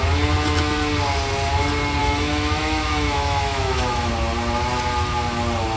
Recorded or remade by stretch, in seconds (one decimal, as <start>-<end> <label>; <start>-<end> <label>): 0.0-2.0 recorded; 2.0-4.1 remade; 4.1-5.8 recorded